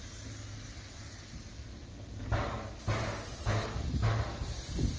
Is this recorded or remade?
recorded